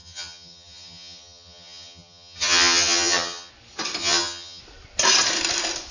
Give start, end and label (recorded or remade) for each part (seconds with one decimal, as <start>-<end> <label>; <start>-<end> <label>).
0.0-3.5 remade; 3.5-4.0 recorded; 4.0-4.6 remade; 4.6-5.9 recorded